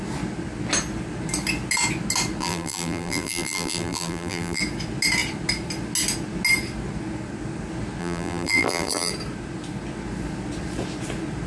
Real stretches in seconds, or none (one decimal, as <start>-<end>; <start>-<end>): 0.0-2.4; 4.6-8.0; 9.1-11.5